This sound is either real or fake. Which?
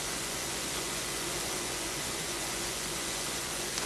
fake